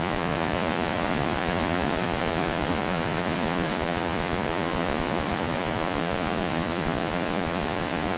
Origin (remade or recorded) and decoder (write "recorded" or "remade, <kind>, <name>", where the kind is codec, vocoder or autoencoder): remade, vocoder, Vocos